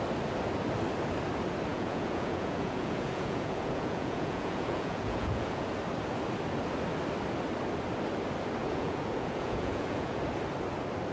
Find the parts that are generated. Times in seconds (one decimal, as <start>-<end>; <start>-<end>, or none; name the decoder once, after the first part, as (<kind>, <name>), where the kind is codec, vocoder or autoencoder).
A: 1.7-5.7 (vocoder, Vocos); 8.6-10.2